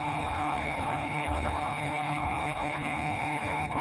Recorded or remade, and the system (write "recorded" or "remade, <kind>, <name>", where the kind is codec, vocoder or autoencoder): remade, codec, HILCodec